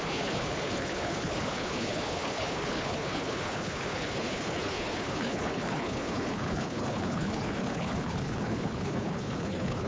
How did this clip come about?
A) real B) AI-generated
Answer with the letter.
B